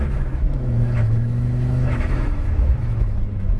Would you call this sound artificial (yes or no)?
yes